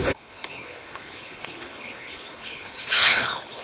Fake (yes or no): yes